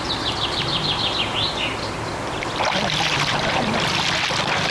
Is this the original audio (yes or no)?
yes